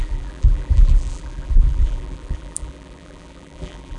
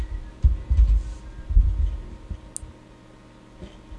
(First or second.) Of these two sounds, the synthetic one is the first